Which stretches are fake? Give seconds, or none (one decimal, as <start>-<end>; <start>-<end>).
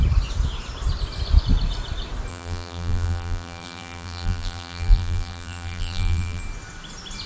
2.3-6.4